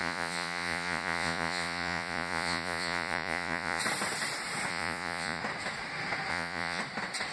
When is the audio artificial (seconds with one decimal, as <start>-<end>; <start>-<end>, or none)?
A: 0.0-3.8; 4.7-5.4; 6.3-6.8